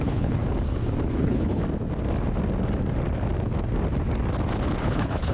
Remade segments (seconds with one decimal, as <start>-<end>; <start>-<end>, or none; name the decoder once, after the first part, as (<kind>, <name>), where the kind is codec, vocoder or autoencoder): 0.0-0.4 (codec, HILCodec); 1.1-1.6; 4.8-5.3